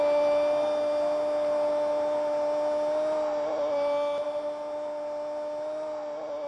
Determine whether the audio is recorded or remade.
recorded